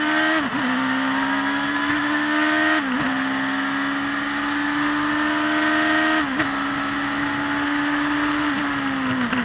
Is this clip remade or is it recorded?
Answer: recorded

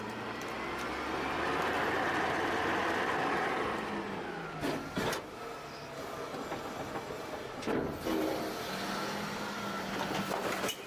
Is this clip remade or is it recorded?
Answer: recorded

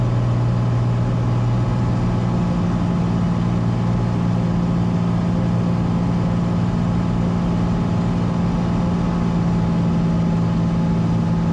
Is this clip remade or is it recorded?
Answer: recorded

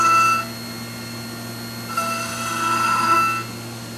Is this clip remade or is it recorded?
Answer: recorded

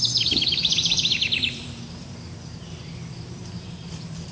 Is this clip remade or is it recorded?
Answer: remade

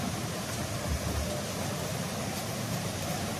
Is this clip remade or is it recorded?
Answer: recorded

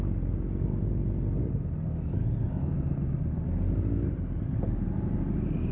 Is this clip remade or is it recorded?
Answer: recorded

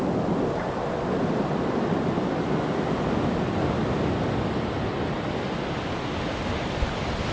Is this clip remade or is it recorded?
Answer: recorded